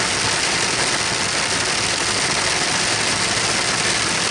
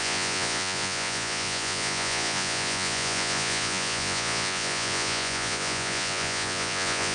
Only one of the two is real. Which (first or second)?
first